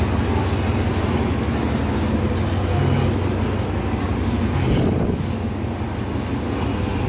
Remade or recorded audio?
recorded